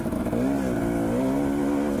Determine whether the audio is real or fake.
real